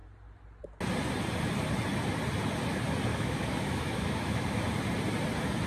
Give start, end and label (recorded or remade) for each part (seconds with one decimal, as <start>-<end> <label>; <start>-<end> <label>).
0.0-3.1 recorded; 3.1-4.6 remade; 4.6-5.7 recorded